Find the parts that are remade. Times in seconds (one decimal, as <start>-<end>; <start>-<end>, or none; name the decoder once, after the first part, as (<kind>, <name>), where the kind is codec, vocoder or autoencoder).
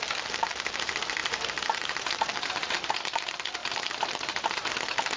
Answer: 1.2-2.9 (vocoder, BigVGAN v2); 3.6-4.7